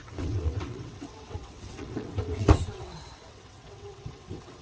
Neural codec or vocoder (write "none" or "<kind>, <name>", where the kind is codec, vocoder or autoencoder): vocoder, WaveNeXt